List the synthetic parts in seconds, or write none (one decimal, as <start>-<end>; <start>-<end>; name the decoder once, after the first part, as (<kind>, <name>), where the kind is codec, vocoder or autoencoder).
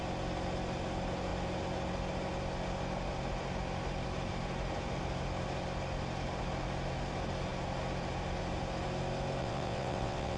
9.4-10.4 (vocoder, WaveNeXt)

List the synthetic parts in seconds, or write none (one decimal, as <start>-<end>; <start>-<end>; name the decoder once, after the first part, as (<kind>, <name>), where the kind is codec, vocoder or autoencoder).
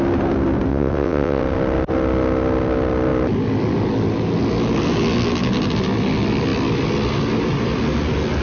0.7-1.4 (vocoder, WaveNeXt)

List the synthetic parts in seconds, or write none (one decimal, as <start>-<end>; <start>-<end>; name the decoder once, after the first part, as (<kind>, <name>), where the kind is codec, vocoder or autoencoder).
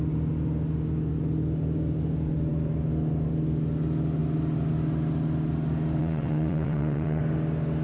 6.0-7.2 (vocoder, WaveNeXt)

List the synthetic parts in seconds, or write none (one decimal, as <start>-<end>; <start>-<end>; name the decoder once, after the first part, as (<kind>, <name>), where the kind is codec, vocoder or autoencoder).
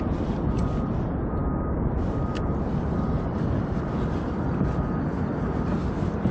none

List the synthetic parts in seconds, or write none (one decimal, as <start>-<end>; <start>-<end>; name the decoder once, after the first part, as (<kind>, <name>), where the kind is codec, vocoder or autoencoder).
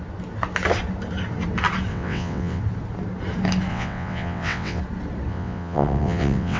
1.9-2.6 (vocoder, WaveNeXt); 3.7-4.8; 5.3-6.6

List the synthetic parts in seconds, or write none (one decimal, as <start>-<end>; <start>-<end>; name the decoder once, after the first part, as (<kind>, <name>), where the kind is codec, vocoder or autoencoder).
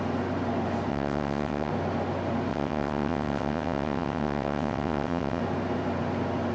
0.9-1.7 (vocoder, WaveNeXt); 2.5-5.4